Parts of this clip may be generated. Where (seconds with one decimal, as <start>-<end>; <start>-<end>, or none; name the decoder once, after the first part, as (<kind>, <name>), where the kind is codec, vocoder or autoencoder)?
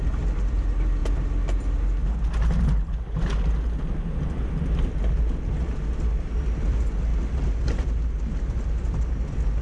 none